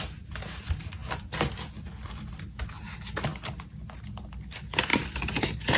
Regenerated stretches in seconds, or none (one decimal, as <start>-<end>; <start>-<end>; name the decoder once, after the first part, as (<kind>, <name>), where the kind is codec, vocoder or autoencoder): none